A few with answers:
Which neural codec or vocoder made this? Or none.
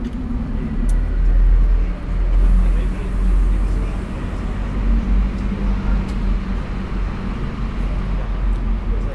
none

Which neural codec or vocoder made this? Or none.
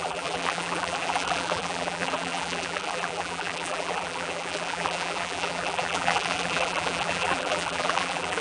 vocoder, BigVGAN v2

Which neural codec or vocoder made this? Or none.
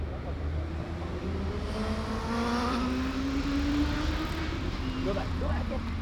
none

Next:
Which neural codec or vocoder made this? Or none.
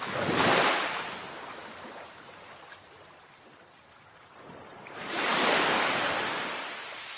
vocoder, BigVGAN v2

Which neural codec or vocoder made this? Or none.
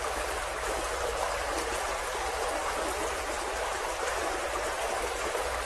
vocoder, BigVGAN v2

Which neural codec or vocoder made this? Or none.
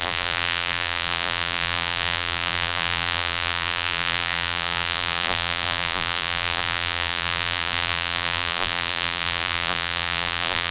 vocoder, BigVGAN v2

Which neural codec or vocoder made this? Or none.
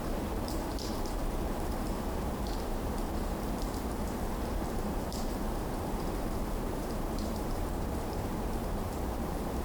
vocoder, BigVGAN v2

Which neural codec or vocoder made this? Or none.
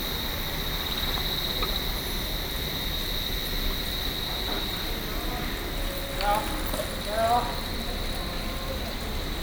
none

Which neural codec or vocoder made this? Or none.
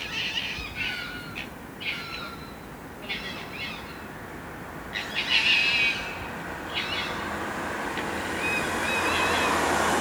none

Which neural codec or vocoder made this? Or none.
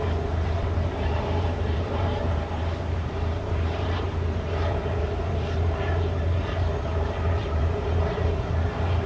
vocoder, BigVGAN v2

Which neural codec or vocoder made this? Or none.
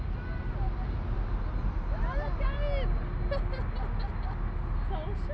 none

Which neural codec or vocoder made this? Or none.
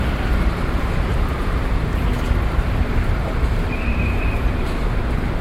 vocoder, BigVGAN v2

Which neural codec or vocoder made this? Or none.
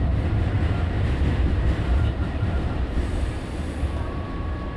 vocoder, BigVGAN v2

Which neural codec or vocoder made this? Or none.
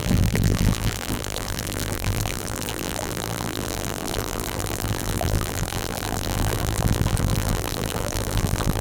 vocoder, BigVGAN v2